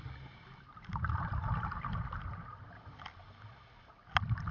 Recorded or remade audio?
recorded